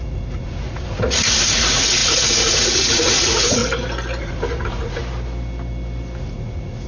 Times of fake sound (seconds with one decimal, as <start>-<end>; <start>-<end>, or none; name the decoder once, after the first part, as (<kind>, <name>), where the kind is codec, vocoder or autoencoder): 0.0-3.6 (vocoder, Vocos); 4.2-5.0; 6.2-6.9